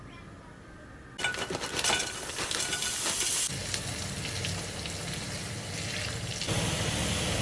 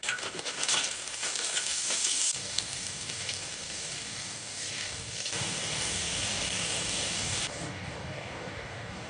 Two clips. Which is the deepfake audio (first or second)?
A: second